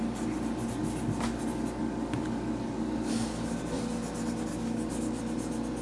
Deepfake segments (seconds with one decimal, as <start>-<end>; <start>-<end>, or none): 0.8-1.4; 1.8-3.6; 4.5-5.2